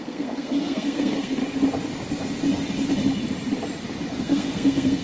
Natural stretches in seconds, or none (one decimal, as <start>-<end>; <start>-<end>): 1.4-4.2